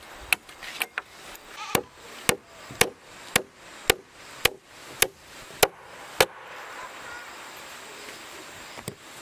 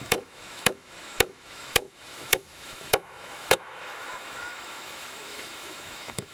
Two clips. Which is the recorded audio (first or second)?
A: first